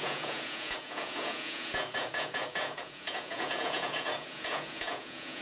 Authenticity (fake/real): fake